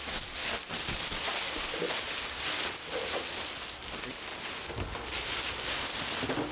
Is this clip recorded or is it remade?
recorded